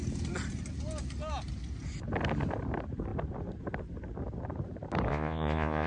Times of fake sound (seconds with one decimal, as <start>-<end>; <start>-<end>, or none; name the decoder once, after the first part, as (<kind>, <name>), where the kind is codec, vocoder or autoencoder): 5.1-5.9 (vocoder, Vocos)